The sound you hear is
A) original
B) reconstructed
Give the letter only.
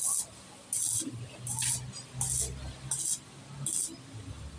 A